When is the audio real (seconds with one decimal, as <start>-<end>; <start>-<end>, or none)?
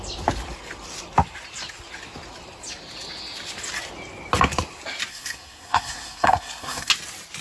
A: 0.0-5.1; 6.9-7.4